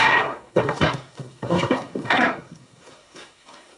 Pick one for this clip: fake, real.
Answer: fake